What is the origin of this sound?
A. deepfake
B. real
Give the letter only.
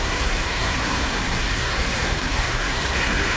A